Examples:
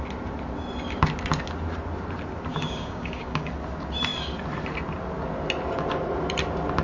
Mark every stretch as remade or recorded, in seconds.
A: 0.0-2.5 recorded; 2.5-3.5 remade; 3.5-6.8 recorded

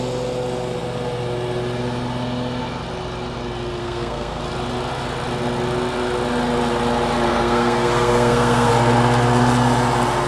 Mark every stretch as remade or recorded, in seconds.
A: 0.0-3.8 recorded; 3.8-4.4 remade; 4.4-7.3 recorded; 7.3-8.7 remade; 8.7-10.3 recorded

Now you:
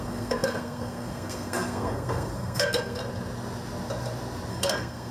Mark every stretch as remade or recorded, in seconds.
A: 0.0-3.0 remade; 3.0-4.5 recorded; 4.5-5.1 remade

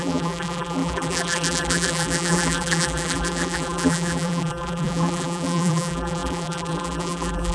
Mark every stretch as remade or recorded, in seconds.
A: 0.0-7.5 remade

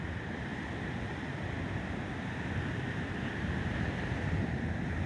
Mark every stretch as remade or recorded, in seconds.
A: 0.0-0.5 recorded; 0.5-3.6 remade; 3.6-5.1 recorded